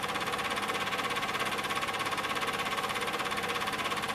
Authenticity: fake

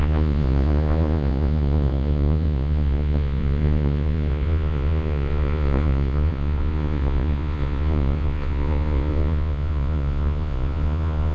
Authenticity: fake